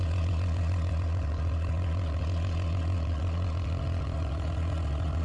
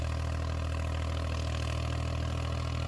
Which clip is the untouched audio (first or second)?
second